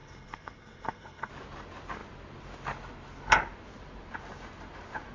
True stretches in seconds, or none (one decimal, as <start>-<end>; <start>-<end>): 1.3-5.1